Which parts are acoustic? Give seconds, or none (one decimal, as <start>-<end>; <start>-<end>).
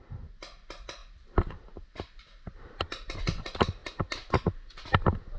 0.0-1.0; 3.2-3.8; 4.5-5.4